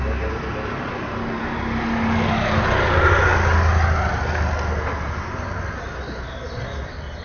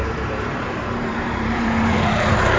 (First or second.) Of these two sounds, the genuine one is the first